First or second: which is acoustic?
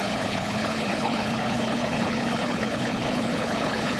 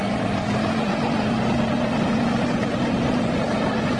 second